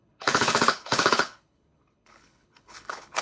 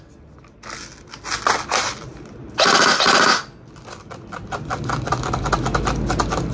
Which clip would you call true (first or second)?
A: second